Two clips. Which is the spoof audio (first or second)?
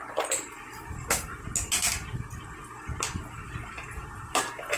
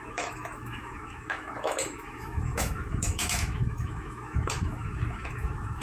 second